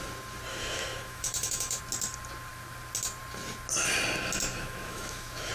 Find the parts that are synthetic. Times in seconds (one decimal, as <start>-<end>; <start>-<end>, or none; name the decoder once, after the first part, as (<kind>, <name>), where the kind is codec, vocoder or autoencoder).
0.5-1.8 (autoencoder, DAC-VAE); 4.5-5.5